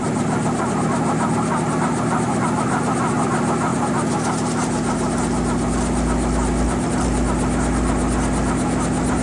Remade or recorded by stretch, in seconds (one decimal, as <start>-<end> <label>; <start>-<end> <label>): 0.0-9.2 recorded